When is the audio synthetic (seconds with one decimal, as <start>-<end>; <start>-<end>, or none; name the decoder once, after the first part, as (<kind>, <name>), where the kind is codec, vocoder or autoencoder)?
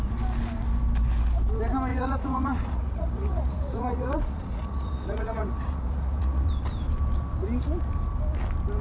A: 1.9-6.5 (vocoder, Vocos)